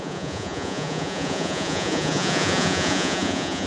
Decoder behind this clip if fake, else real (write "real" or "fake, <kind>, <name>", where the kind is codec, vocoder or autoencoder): fake, vocoder, Vocos